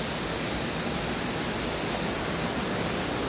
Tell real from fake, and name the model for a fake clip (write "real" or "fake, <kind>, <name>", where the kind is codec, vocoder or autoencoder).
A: real